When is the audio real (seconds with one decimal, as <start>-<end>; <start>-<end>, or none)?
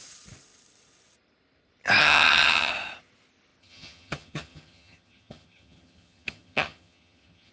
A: 0.0-2.0; 2.7-3.6